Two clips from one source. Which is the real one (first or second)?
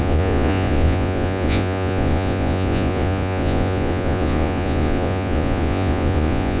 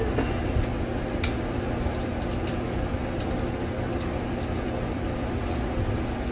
second